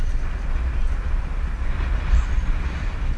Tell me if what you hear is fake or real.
real